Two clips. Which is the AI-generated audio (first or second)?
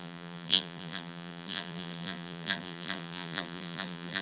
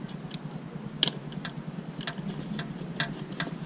first